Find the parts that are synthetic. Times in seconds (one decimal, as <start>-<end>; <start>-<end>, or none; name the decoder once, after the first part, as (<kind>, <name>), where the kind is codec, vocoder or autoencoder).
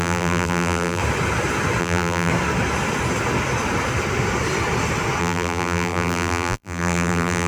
0.0-1.0 (vocoder, BigVGAN v2); 1.8-2.3; 5.2-7.5